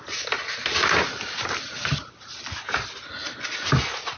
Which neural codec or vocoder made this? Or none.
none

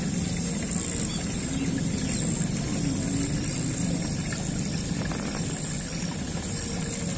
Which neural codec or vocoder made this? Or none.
none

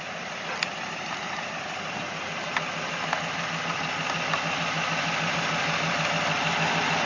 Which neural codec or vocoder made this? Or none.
none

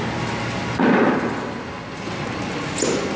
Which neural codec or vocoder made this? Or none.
none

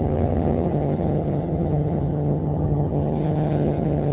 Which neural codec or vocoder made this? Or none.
vocoder, HiFi-GAN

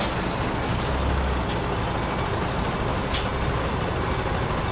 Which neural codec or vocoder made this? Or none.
none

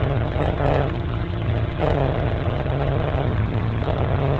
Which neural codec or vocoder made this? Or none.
vocoder, HiFi-GAN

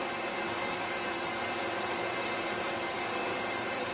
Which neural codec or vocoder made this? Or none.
none